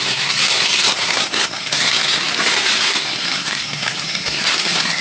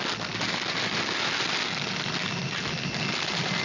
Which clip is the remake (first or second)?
first